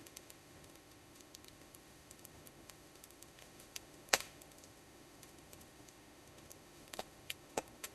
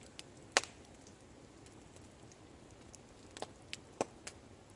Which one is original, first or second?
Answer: second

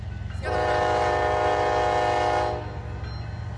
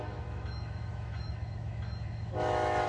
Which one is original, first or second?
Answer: first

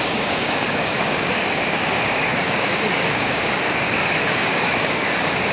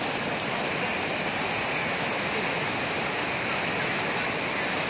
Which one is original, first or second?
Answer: second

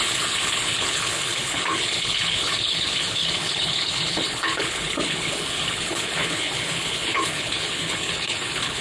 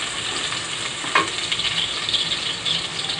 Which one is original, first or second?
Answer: second